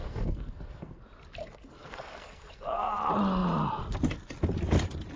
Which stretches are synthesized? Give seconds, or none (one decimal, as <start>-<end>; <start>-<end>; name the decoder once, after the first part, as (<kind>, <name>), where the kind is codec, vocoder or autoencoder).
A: 0.0-1.0 (codec, SNAC); 1.4-3.0